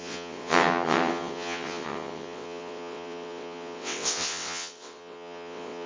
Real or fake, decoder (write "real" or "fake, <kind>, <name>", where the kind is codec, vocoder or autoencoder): fake, vocoder, WaveNeXt